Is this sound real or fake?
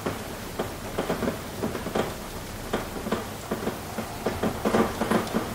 real